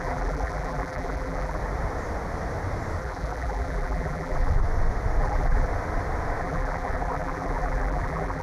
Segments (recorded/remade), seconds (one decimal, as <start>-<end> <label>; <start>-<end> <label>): 0.0-1.6 remade; 1.6-3.0 recorded; 3.0-4.6 remade; 4.6-5.2 recorded; 5.2-5.7 remade; 5.7-6.4 recorded; 6.4-8.4 remade